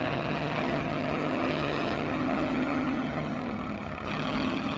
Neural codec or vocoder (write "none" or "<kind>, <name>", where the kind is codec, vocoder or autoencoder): vocoder, HiFi-GAN